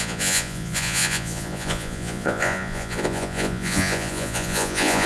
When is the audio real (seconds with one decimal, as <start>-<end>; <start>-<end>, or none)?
none